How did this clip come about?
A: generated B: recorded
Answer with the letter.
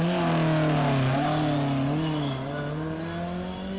B